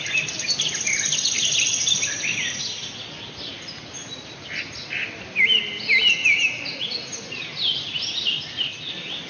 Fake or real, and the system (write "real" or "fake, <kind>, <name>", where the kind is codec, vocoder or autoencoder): real